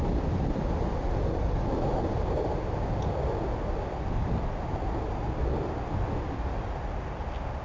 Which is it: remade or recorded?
recorded